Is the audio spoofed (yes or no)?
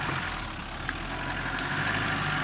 no